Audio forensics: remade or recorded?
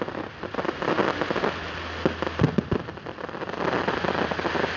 recorded